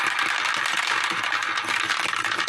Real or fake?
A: real